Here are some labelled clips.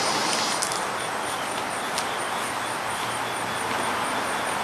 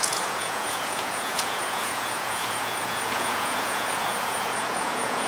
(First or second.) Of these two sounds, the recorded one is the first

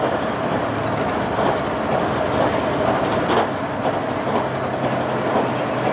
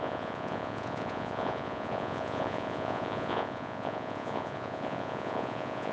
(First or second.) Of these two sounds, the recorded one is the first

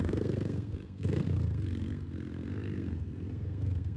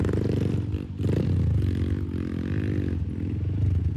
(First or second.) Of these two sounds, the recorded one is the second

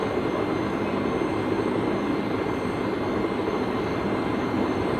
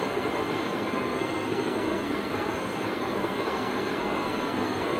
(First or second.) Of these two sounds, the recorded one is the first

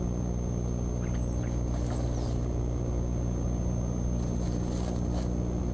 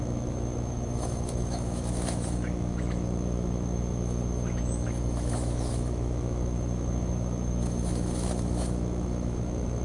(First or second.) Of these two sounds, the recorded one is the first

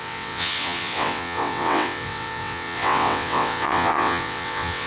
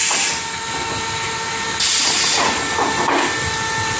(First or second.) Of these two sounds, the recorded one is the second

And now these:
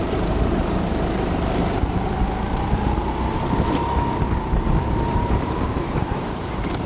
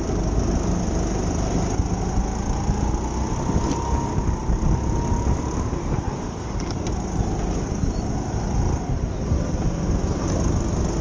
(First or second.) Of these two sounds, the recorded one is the second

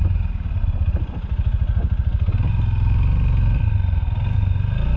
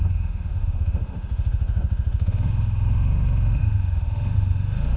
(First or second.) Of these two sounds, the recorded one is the first